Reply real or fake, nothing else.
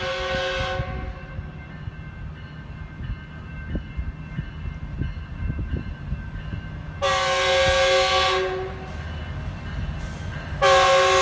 real